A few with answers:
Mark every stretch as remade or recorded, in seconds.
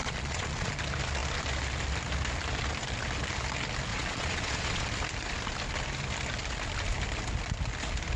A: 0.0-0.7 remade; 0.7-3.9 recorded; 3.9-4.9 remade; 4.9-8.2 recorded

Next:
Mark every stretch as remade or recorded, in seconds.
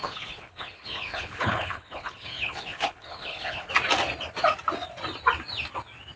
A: 0.0-3.7 remade; 3.7-6.2 recorded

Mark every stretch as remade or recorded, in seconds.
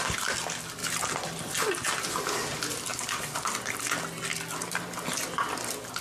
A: 0.0-6.0 recorded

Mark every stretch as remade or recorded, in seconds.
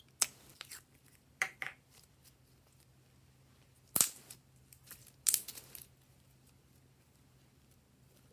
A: 0.0-8.3 recorded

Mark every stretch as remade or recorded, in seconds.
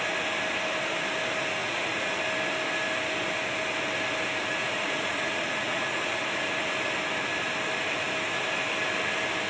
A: 0.0-1.6 recorded; 1.6-2.2 remade; 2.2-4.6 recorded; 4.6-6.2 remade; 6.2-9.5 recorded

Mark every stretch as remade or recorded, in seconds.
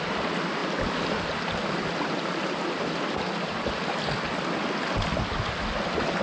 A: 0.0-6.2 recorded